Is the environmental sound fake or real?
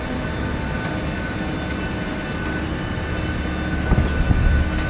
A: real